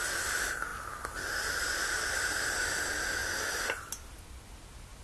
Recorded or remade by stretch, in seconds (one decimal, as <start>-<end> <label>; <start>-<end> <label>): 0.0-5.0 recorded